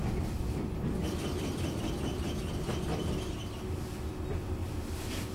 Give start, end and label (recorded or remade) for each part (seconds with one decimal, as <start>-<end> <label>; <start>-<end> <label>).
0.0-5.3 recorded